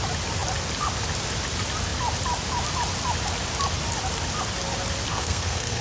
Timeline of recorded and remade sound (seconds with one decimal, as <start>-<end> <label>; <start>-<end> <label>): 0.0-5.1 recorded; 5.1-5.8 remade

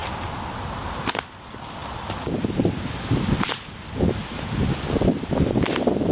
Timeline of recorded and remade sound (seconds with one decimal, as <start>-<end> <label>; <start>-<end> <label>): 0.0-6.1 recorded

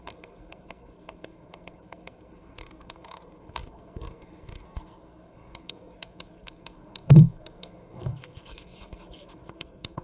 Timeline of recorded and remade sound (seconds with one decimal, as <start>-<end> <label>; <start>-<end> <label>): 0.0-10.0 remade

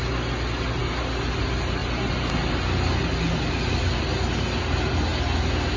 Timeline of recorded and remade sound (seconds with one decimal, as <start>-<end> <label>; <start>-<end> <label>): 0.0-5.8 recorded